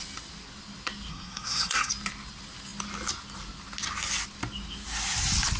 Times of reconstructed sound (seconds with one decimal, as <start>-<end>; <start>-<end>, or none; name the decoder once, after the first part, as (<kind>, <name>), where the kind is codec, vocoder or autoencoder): 1.1-1.9 (codec, SNAC)